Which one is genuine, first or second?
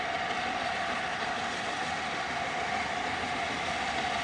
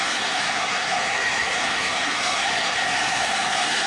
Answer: first